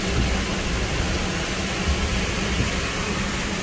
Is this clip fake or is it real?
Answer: real